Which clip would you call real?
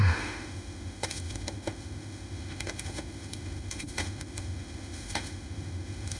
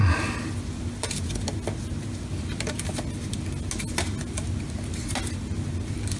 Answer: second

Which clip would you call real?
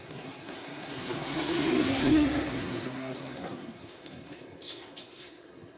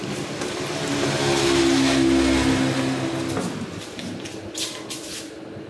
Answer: second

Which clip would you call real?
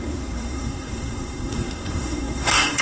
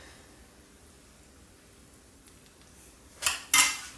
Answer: second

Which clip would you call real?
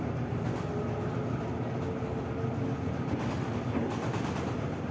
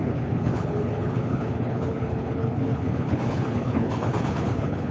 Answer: first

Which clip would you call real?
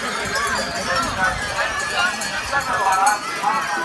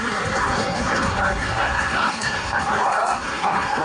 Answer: first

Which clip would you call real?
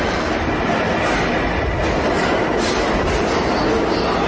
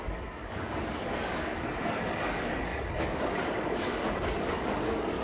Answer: first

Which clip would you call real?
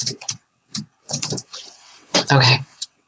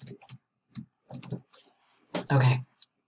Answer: second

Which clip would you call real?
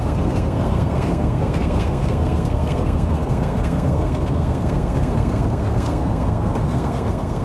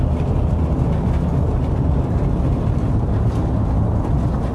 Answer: second